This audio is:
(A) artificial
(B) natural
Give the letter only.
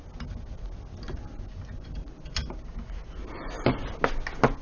B